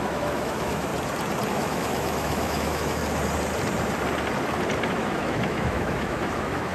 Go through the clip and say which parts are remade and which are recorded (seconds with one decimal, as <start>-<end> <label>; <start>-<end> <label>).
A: 0.0-0.9 remade; 0.9-1.5 recorded; 1.5-3.0 remade; 3.0-4.9 recorded; 4.9-6.7 remade